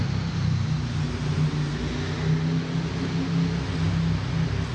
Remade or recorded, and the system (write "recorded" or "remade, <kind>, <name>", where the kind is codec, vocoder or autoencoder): recorded